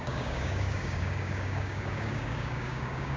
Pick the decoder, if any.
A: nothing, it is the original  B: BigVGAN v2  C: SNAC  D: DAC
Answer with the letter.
D